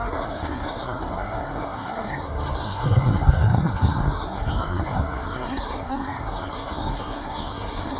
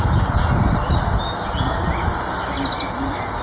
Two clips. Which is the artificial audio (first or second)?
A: first